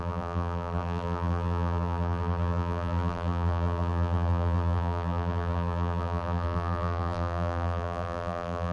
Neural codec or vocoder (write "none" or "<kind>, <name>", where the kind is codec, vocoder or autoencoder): vocoder, BigVGAN v2